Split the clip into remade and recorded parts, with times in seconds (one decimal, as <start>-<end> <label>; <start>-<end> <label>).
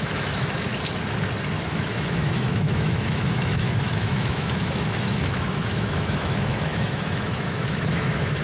0.0-0.7 remade; 0.7-1.6 recorded; 1.6-8.4 remade